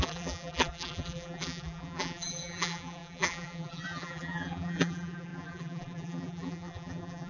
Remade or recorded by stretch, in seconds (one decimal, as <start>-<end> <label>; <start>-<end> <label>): 0.0-7.3 remade